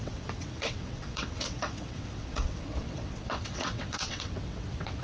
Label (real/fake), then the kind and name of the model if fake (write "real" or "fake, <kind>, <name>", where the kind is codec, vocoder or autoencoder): fake, vocoder, WaveNeXt